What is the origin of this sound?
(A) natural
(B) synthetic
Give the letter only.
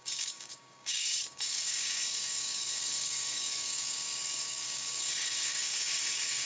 B